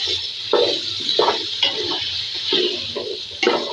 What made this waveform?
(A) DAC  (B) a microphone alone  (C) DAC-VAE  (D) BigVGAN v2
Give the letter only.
B